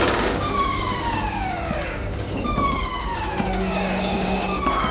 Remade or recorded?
remade